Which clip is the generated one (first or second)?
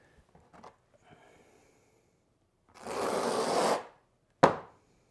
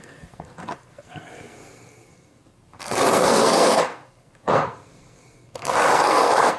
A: second